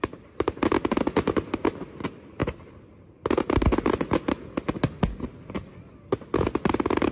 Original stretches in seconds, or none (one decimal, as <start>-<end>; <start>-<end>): 0.0-7.1